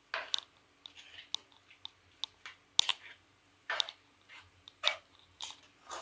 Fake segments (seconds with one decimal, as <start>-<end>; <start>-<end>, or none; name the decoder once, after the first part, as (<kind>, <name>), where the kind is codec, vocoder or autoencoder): 2.9-5.6 (vocoder, BigVGAN v2)